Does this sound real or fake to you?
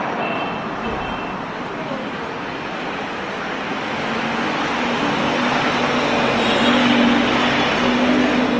real